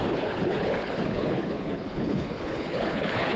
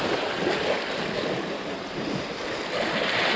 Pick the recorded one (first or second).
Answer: second